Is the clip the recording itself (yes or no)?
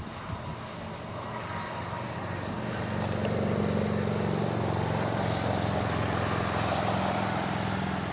yes